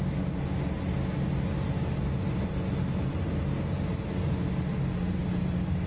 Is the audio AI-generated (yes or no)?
no